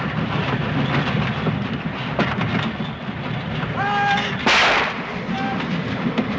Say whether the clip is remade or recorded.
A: recorded